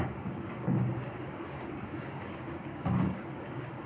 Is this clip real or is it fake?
fake